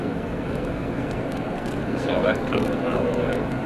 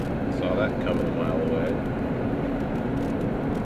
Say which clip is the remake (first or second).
first